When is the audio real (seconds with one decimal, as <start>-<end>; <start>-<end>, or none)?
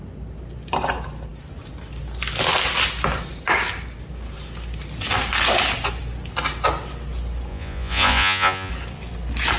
0.0-7.5; 8.7-9.6